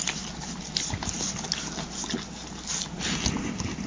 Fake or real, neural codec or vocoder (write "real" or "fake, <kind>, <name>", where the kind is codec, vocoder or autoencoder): real